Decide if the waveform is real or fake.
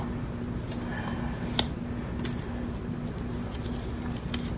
real